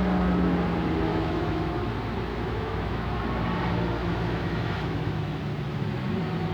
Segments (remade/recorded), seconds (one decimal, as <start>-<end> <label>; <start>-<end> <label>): 0.0-1.1 recorded; 1.1-1.7 remade; 1.7-2.3 recorded; 2.3-3.2 remade; 3.2-4.0 recorded; 4.0-5.4 remade; 5.4-6.5 recorded